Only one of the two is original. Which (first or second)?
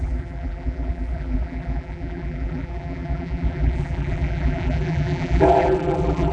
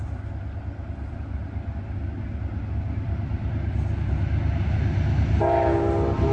second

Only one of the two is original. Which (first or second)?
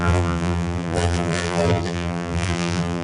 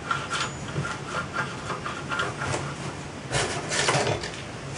second